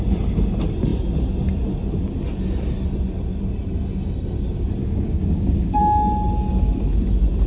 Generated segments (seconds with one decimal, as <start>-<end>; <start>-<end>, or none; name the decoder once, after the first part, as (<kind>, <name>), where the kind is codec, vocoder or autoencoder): 4.8-5.8 (codec, DAC)

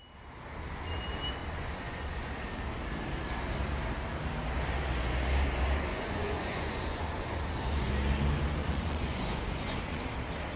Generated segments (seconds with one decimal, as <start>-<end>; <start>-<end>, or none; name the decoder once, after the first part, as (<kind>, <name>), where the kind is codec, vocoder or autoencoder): 1.4-2.3 (vocoder, Vocos); 5.9-7.9; 8.6-10.0

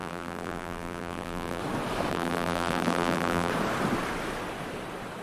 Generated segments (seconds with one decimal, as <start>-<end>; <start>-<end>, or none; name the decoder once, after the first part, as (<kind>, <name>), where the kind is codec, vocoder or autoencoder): 0.0-1.6 (vocoder, BigVGAN v2); 2.1-3.5